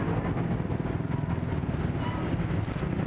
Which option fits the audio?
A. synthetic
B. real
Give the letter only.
B